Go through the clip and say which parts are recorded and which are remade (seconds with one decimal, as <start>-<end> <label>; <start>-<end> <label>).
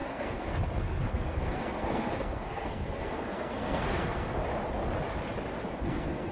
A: 0.0-4.4 remade; 4.4-5.8 recorded; 5.8-6.3 remade